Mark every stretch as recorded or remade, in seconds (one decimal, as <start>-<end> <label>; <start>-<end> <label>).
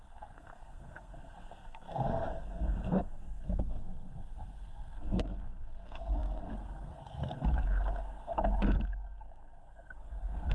0.0-10.5 remade